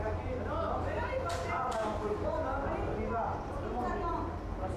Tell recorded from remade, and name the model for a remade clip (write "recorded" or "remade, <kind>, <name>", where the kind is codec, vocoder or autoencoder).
recorded